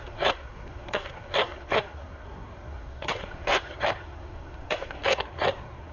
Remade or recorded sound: remade